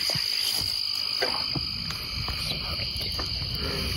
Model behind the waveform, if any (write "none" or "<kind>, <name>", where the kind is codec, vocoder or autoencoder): none